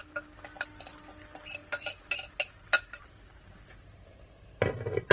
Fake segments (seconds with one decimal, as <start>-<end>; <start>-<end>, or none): none